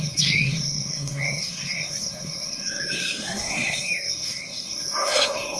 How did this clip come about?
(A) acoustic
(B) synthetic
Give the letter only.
B